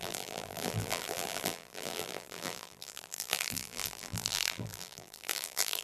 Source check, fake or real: fake